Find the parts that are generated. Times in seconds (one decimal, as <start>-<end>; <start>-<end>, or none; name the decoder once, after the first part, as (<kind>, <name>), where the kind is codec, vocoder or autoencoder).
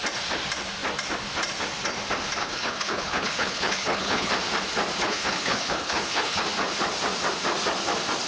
2.4-4.3 (codec, HILCodec); 5.0-6.4